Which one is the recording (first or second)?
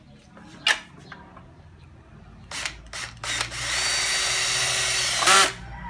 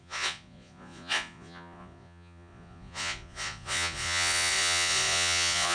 first